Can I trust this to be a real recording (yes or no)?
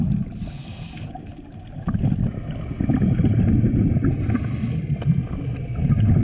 yes